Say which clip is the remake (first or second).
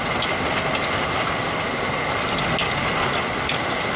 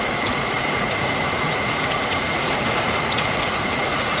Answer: second